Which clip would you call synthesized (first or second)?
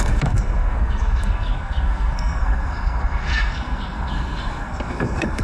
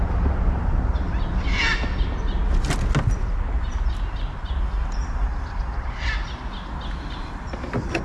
first